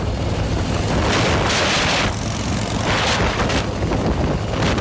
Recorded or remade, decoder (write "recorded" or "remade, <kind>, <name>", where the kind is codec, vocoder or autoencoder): recorded